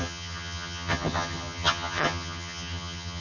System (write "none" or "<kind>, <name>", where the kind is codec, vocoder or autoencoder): vocoder, HiFi-GAN